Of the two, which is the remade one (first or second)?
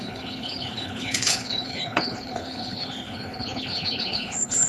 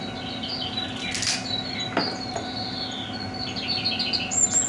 first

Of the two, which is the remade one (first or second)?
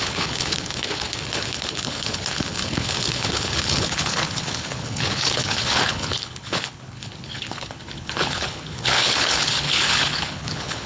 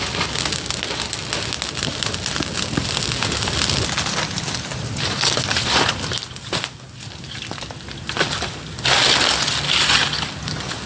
first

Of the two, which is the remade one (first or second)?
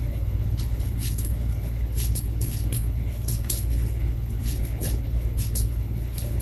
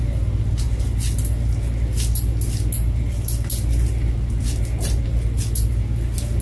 first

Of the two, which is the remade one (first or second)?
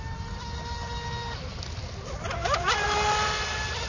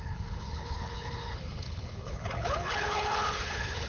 second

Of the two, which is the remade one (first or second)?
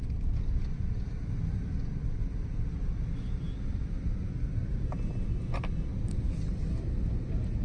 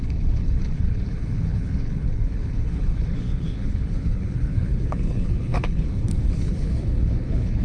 second